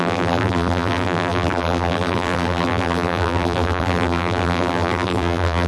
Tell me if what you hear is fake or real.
fake